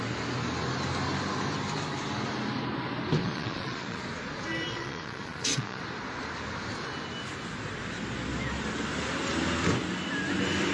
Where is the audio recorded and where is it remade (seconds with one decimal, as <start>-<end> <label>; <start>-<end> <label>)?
0.0-3.2 recorded; 3.2-4.0 remade; 4.0-4.7 recorded; 4.7-5.8 remade; 5.8-10.7 recorded